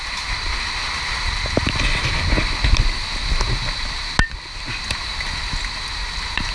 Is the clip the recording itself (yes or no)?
yes